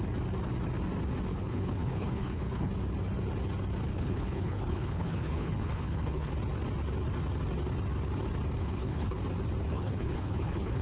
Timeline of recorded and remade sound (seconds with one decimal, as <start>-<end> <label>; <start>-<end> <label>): 0.0-1.3 recorded; 1.3-2.7 remade; 2.7-3.9 recorded; 3.9-6.3 remade; 6.3-8.6 recorded; 8.6-9.2 remade; 9.2-9.7 recorded; 9.7-10.8 remade